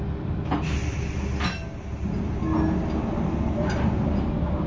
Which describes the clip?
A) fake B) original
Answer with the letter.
B